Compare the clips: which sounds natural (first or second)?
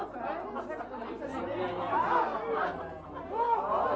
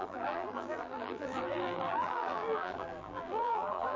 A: first